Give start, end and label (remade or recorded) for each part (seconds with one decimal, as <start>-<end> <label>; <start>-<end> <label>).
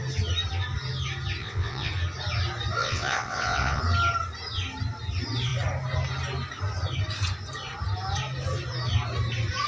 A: 0.0-1.4 recorded; 1.4-1.9 remade; 1.9-2.8 recorded; 2.8-3.8 remade; 3.8-9.7 recorded